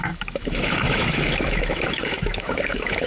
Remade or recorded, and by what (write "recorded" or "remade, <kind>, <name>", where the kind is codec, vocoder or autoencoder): remade, autoencoder, DAC-VAE